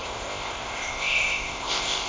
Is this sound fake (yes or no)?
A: yes